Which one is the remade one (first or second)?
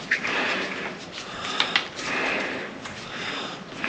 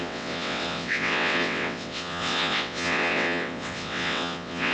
second